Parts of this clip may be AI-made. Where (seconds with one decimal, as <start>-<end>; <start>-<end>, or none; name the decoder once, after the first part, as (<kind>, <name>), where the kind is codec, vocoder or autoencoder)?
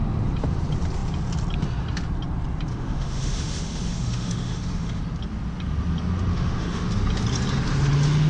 2.7-5.0 (autoencoder, DAC-VAE); 6.3-6.9